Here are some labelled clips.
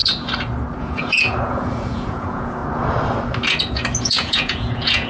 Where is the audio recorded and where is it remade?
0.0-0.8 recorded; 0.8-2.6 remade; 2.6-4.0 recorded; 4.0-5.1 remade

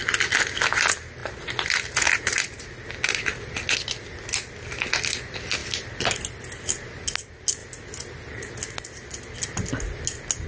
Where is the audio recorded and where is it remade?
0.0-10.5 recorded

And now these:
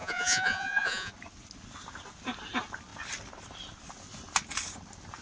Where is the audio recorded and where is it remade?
0.0-1.1 remade; 1.1-5.2 recorded